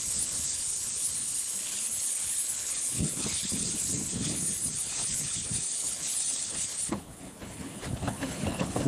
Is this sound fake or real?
fake